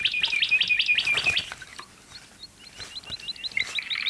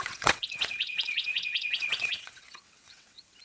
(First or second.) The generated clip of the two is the second